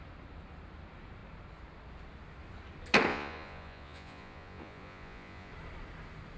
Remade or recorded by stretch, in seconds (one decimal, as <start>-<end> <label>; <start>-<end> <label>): 0.0-3.1 recorded; 3.1-5.5 remade; 5.5-6.4 recorded